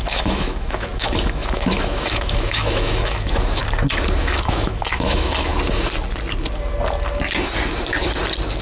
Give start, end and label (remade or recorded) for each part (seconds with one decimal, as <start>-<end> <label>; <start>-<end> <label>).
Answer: 0.0-3.6 remade; 3.6-4.2 recorded; 4.2-5.5 remade; 5.5-8.6 recorded